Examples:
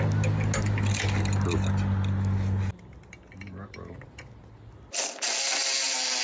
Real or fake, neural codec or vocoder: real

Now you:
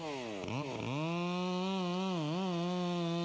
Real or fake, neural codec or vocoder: real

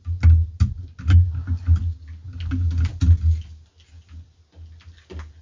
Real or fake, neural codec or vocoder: real